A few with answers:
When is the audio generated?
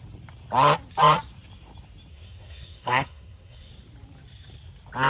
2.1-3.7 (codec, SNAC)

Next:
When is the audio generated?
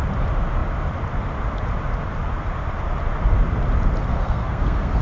4.1-5.0 (codec, SNAC)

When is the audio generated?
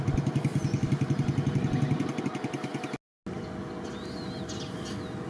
none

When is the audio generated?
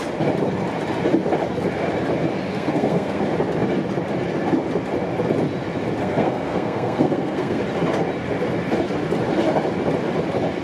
2.5-3.2 (codec, SNAC); 6.0-7.6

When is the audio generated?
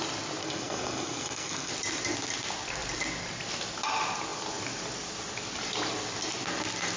0.4-1.7 (codec, SNAC)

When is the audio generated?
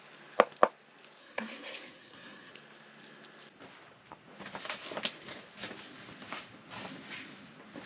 1.2-2.5 (codec, SNAC)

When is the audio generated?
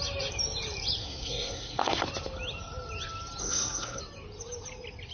1.0-2.0 (codec, SNAC); 3.4-4.0